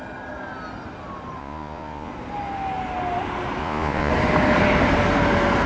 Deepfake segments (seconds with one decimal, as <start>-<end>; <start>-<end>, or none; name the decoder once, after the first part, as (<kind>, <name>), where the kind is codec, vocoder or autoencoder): 1.4-2.1 (vocoder, Vocos); 3.6-4.1